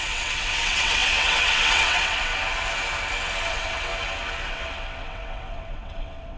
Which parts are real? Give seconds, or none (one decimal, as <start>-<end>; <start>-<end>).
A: 2.3-3.5; 3.9-4.5